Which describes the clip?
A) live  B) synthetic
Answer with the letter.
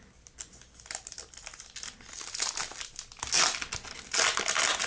A